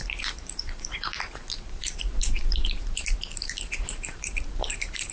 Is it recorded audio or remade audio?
remade